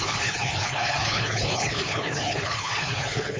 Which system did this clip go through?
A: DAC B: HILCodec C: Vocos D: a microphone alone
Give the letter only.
B